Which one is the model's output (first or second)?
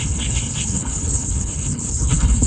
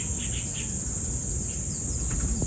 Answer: first